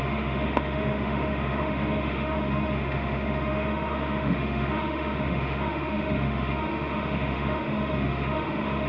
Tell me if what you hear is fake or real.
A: fake